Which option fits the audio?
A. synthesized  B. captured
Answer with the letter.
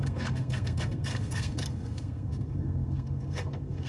A